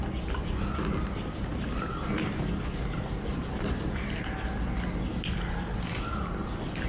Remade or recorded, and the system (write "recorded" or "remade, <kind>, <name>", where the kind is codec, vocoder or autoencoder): recorded